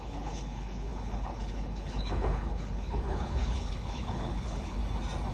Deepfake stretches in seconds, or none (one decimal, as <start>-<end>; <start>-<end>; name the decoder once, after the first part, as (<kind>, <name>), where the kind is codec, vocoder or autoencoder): 0.0-4.8 (codec, HILCodec)